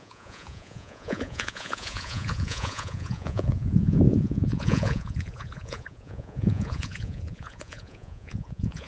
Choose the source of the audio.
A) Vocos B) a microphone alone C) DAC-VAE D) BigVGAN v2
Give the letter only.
A